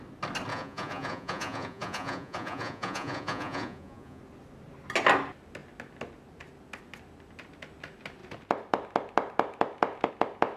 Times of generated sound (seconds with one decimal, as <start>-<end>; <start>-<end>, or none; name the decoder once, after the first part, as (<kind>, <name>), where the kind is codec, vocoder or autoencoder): 0.5-4.2 (vocoder, Vocos)